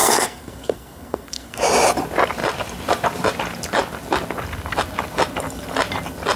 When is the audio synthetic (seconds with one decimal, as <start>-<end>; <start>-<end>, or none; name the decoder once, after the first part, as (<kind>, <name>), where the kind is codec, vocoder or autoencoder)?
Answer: 0.0-1.6 (codec, SNAC)